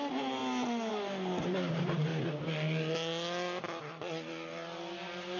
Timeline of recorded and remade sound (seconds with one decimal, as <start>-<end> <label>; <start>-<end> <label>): 0.0-0.4 remade; 0.4-0.9 recorded; 0.9-2.1 remade; 2.1-5.4 recorded